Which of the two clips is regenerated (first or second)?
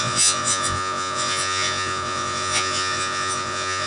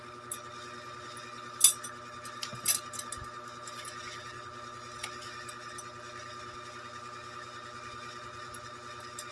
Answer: first